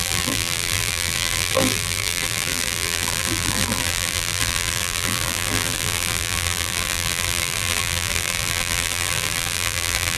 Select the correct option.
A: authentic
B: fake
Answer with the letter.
B